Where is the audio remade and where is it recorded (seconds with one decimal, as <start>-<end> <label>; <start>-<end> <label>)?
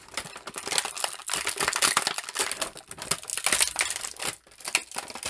0.0-5.3 recorded